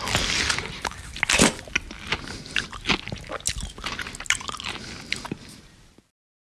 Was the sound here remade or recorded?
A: recorded